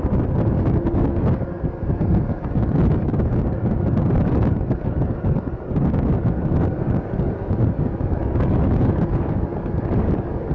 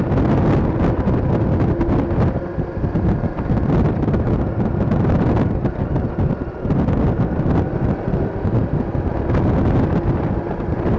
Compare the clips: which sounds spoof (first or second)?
first